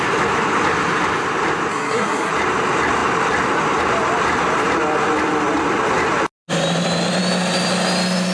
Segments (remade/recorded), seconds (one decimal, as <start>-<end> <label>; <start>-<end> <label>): 0.0-1.7 recorded; 1.7-2.3 remade; 2.3-8.3 recorded